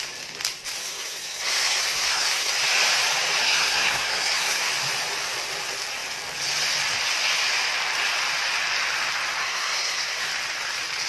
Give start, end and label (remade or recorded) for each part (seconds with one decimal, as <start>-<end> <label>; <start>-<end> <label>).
0.0-0.8 recorded; 0.8-2.5 remade; 2.5-3.4 recorded; 3.4-4.7 remade; 4.7-9.4 recorded; 9.4-10.3 remade; 10.3-11.1 recorded